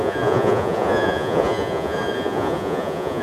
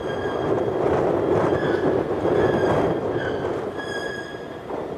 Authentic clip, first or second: second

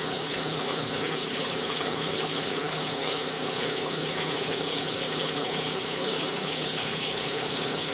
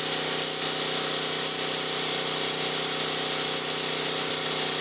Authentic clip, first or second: second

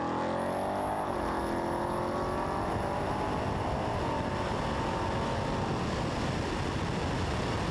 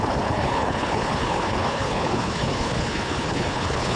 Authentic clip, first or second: first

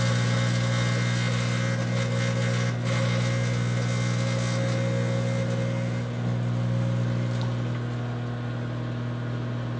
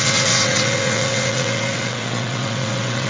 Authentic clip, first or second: first